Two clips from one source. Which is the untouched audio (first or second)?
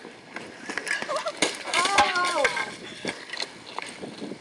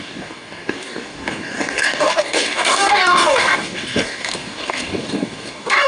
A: first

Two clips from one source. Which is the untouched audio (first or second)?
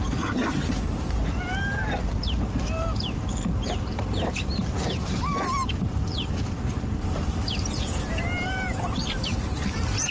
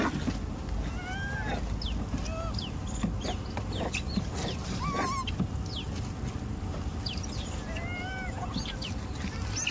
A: second